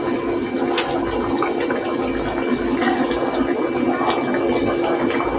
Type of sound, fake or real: real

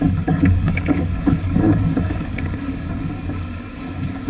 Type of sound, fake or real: fake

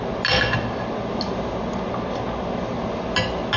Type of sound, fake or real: real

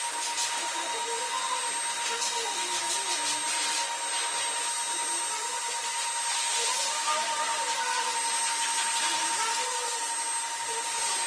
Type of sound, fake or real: real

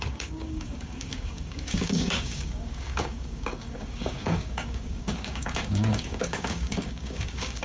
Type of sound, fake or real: fake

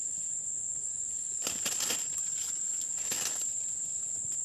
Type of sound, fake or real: real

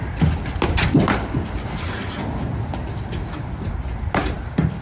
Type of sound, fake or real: real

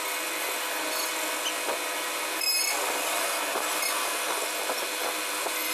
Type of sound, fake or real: real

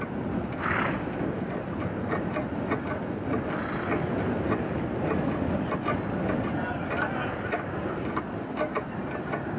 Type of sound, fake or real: real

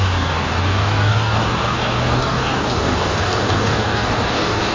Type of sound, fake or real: fake